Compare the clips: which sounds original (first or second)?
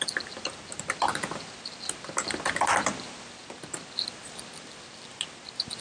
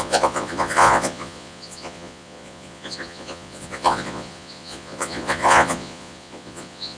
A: first